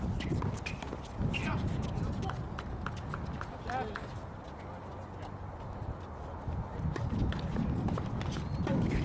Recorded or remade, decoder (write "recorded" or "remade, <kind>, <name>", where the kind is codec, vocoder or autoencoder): recorded